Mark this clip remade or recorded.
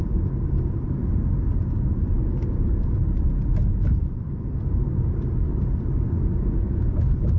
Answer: remade